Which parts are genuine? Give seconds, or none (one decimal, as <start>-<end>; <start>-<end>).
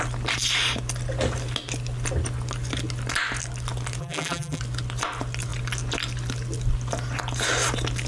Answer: 0.0-4.0; 4.6-8.1